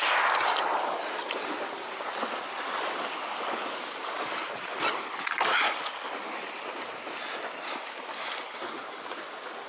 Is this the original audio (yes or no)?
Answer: yes